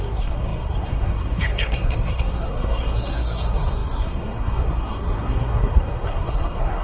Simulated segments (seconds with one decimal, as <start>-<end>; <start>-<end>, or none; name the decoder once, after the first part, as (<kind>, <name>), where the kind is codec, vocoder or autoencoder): 0.0-6.8 (codec, SNAC)